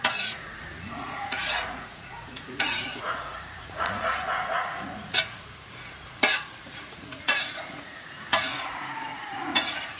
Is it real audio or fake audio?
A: fake